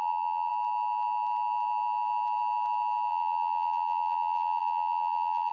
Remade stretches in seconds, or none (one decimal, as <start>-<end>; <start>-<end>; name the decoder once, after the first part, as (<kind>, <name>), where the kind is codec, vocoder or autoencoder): 0.0-0.5 (vocoder, BigVGAN v2); 3.1-5.5